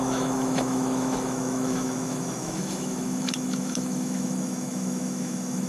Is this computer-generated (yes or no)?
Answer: yes